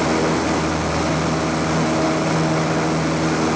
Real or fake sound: real